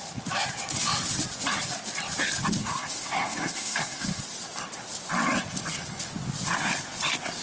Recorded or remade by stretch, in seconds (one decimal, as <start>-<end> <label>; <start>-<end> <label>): 0.0-2.6 recorded; 2.6-4.2 remade; 4.2-7.4 recorded